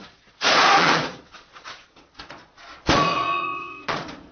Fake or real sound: fake